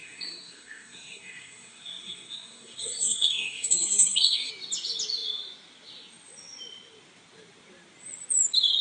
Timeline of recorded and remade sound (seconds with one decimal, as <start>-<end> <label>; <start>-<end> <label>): 0.0-4.5 remade; 4.5-8.8 recorded